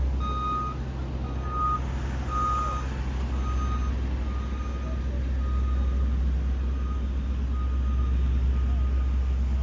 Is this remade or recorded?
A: recorded